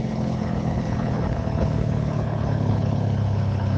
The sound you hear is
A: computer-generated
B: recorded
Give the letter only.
A